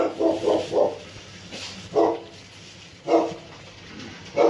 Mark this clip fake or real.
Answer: real